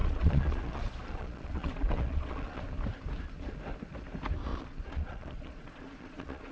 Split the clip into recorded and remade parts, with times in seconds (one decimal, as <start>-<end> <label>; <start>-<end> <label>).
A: 0.0-2.6 remade; 2.6-4.5 recorded; 4.5-6.5 remade